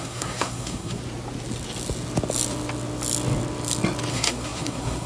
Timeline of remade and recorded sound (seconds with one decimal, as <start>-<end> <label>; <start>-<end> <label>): 0.0-1.0 remade; 1.0-4.1 recorded; 4.1-5.1 remade